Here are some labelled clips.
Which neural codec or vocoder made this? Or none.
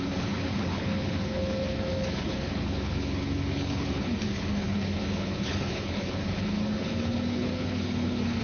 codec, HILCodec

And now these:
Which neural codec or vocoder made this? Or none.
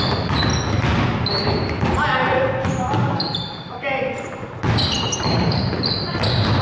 none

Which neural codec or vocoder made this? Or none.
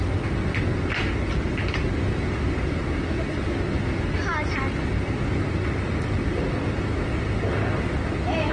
none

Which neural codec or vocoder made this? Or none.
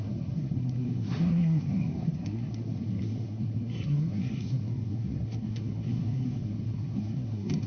codec, SNAC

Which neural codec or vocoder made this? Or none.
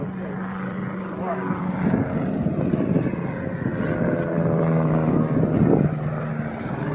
none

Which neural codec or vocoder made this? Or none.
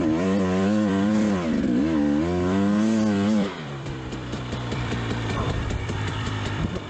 vocoder, BigVGAN v2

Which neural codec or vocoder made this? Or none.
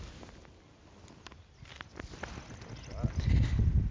none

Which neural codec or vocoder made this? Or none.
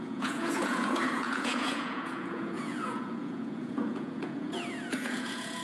vocoder, Vocos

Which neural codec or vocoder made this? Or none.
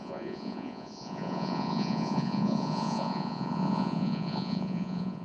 vocoder, Vocos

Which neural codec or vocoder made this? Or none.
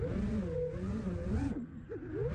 none